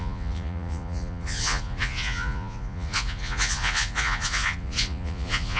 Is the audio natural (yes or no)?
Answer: no